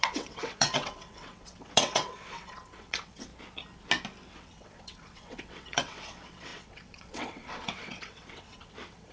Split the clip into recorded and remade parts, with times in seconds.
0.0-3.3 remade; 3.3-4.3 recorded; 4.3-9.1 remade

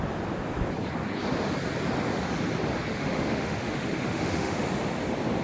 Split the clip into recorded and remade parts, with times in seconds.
0.0-2.9 recorded; 2.9-4.6 remade; 4.6-5.4 recorded

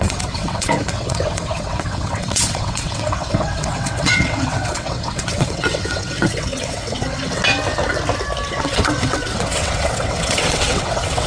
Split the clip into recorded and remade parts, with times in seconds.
0.0-7.4 remade; 7.4-8.5 recorded; 8.5-11.3 remade

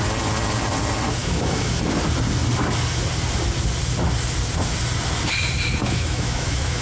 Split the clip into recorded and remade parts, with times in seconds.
0.0-1.2 recorded; 1.2-1.8 remade; 1.8-5.8 recorded; 5.8-6.8 remade